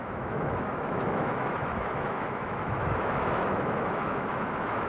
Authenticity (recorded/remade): remade